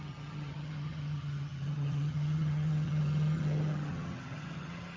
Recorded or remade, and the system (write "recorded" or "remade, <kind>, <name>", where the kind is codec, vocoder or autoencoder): remade, vocoder, HiFi-GAN